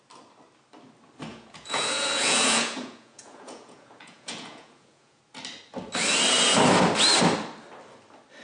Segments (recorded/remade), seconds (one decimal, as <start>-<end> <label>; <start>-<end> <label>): 0.0-1.3 recorded; 1.3-5.2 remade; 5.2-8.4 recorded